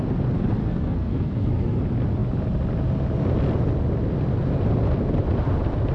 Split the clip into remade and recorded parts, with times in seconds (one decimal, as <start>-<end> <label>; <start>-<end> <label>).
0.0-0.6 recorded; 0.6-1.8 remade; 1.8-5.9 recorded